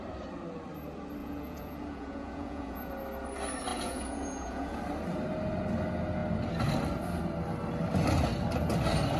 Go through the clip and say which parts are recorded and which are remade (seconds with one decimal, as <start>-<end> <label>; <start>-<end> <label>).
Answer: 0.0-1.2 recorded; 1.2-2.9 remade; 2.9-3.7 recorded; 3.7-4.8 remade; 4.8-9.2 recorded